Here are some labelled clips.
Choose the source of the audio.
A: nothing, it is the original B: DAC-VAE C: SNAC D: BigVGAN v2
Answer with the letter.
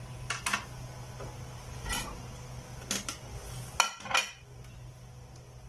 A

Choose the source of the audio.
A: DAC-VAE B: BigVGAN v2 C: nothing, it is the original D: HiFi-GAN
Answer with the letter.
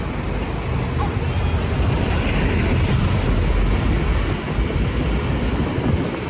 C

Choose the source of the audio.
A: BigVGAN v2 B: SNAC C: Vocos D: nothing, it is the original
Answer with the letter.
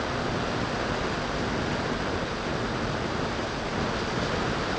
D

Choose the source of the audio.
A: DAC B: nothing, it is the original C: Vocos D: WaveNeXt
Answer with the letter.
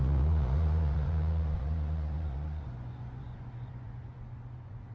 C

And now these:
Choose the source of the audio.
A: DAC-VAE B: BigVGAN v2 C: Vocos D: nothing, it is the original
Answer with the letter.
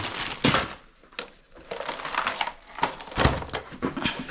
D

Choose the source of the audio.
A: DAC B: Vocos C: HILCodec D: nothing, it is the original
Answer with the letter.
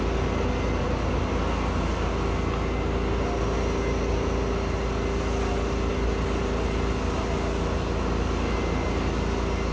D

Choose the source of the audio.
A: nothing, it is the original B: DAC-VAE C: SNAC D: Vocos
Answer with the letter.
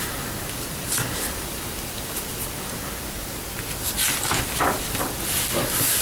A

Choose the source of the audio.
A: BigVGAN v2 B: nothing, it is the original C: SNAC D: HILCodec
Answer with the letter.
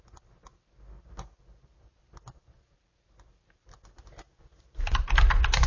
B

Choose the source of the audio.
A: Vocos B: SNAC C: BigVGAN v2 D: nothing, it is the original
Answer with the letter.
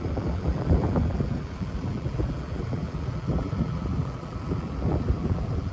C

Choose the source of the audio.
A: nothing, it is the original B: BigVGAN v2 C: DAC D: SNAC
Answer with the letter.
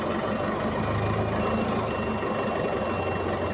A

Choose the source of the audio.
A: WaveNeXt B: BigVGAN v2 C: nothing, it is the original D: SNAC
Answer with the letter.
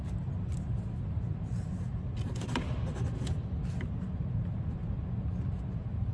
C